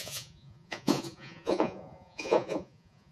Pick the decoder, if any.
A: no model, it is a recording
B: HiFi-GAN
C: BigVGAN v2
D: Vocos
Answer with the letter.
D